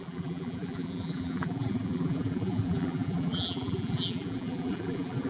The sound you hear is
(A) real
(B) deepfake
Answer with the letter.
B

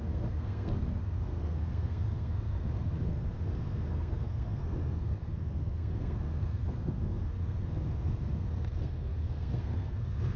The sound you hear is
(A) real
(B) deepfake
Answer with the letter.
B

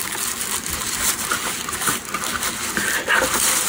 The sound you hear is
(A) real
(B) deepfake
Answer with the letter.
B